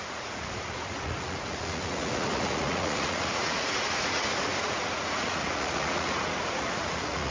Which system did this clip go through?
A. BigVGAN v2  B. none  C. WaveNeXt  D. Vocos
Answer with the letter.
D